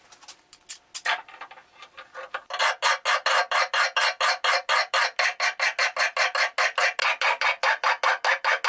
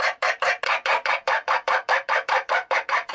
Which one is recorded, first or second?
first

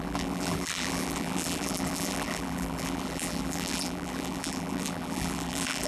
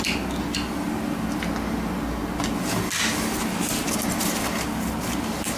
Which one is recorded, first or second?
second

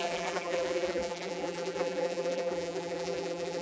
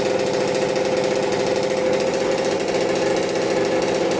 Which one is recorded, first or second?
second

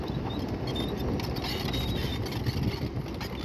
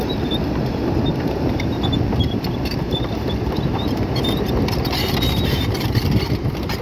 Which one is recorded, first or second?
first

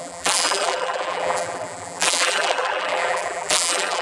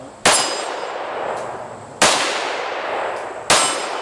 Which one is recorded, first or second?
second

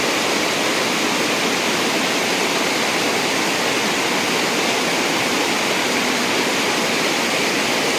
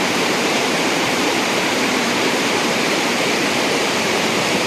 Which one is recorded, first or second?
first